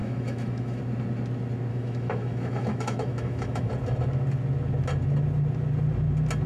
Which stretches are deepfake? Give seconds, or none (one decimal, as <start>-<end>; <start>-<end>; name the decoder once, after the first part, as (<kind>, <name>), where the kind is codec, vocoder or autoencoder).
0.0-0.8 (autoencoder, DAC-VAE); 1.7-3.7